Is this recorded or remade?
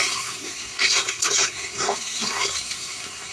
remade